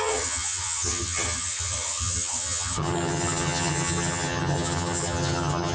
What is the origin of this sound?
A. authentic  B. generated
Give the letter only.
B